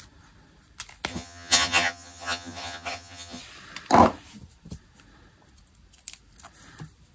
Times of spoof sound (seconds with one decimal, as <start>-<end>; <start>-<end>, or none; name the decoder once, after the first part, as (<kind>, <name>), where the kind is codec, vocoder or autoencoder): 1.1-3.4 (vocoder, HiFi-GAN)